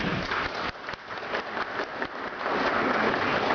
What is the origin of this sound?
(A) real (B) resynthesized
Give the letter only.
A